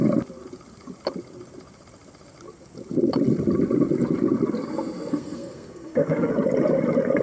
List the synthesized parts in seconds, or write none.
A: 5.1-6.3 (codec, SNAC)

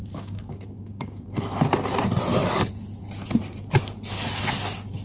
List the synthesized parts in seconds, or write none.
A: 0.0-1.3 (codec, DAC)

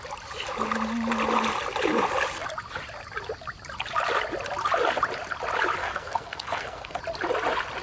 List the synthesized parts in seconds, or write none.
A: 5.8-7.0 (codec, SNAC)